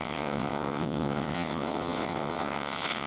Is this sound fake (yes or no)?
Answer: yes